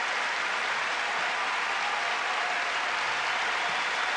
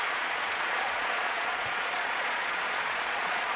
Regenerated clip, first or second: second